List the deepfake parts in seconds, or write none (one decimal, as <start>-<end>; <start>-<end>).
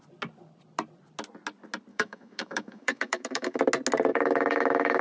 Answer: 1.9-3.6; 4.1-5.0